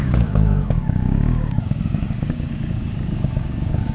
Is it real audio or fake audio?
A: fake